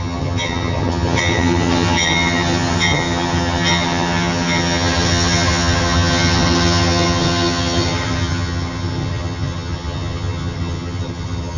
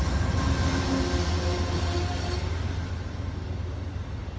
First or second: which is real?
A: second